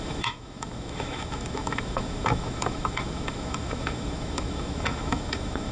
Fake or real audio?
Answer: fake